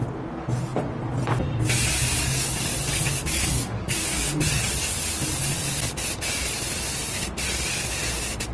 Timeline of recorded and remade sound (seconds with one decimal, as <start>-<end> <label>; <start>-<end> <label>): 0.0-2.2 recorded; 2.2-4.3 remade; 4.3-8.5 recorded

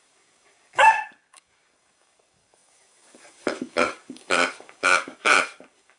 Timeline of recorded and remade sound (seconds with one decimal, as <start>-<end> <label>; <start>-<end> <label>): 0.0-6.0 remade

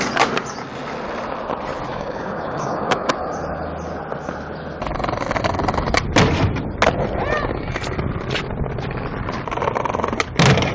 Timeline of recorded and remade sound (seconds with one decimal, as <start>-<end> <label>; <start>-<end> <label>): 0.0-1.9 recorded; 1.9-3.1 remade; 3.1-10.7 recorded

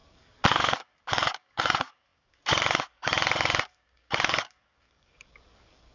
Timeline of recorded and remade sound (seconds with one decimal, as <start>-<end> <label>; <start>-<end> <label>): 0.0-5.9 remade

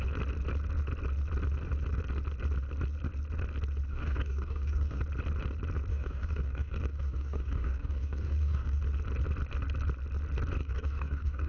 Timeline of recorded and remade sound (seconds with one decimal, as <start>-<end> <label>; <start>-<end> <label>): 0.0-3.9 recorded; 3.9-5.0 remade; 5.0-5.9 recorded; 5.9-8.8 remade; 8.8-10.6 recorded; 10.6-11.5 remade

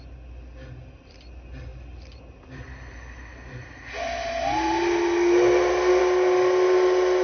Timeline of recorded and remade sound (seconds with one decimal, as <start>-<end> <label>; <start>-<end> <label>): 0.0-7.2 recorded